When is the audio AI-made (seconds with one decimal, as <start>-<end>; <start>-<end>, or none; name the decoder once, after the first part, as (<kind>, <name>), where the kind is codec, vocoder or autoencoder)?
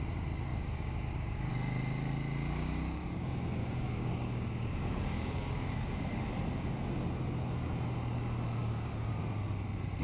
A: 0.5-1.5 (codec, DAC); 3.6-6.2; 8.6-9.2